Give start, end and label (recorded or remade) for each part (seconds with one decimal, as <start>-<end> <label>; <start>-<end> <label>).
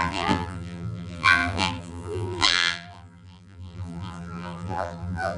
0.0-5.4 remade